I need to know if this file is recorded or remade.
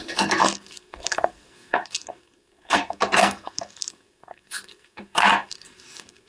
remade